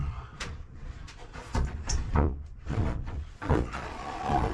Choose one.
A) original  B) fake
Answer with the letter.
B